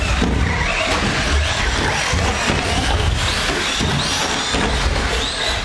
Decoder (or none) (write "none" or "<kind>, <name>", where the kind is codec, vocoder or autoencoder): none